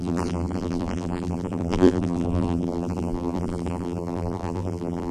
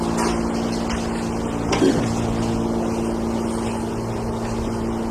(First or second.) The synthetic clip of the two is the first